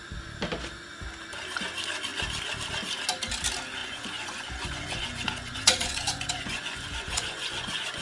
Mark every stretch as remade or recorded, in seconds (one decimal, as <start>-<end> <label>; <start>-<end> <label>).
0.0-3.8 recorded; 3.8-8.0 remade